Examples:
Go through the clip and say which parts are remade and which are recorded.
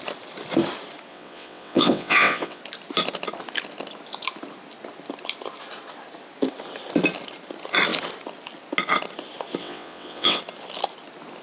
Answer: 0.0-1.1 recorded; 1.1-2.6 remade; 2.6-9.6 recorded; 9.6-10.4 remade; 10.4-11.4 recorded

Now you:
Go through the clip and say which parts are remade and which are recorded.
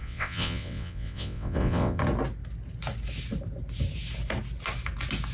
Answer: 0.0-2.0 remade; 2.0-5.3 recorded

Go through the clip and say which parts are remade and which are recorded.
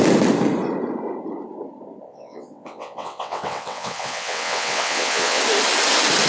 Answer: 0.0-2.1 recorded; 2.1-5.4 remade; 5.4-6.3 recorded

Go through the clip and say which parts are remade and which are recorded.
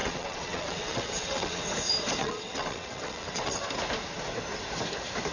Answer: 0.0-1.6 remade; 1.6-2.2 recorded; 2.2-3.6 remade; 3.6-5.3 recorded